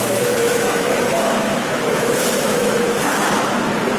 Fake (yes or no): yes